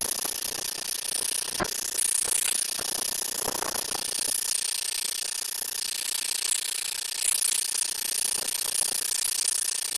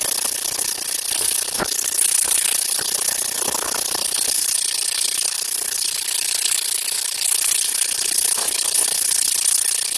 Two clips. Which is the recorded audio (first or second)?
first